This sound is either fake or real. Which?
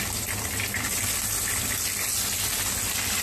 real